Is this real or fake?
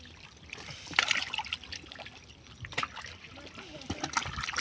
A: real